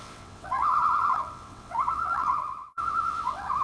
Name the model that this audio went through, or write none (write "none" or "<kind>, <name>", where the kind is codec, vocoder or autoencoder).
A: vocoder, WaveNeXt